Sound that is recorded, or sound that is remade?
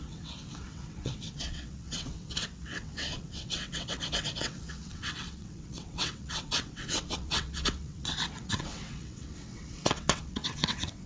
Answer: remade